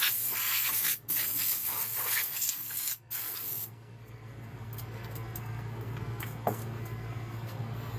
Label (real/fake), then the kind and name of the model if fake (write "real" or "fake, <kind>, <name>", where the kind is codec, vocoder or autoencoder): fake, codec, SNAC